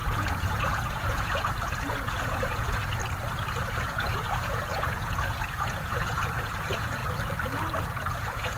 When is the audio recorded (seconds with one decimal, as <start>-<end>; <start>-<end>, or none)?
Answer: 3.0-3.6; 7.0-7.8